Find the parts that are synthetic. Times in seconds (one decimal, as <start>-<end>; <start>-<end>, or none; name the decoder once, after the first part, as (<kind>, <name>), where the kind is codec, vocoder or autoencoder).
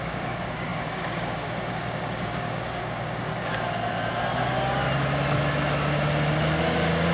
0.0-3.3 (codec, DAC); 6.6-7.1